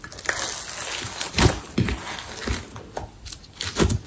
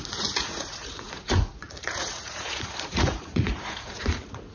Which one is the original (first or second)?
first